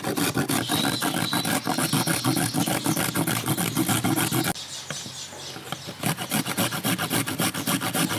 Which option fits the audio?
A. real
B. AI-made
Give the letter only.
A